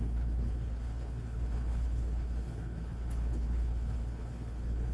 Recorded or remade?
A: remade